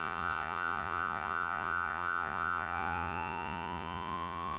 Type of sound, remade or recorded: remade